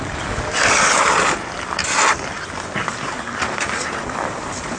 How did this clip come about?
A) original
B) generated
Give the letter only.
A